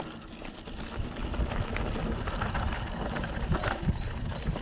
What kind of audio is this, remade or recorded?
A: recorded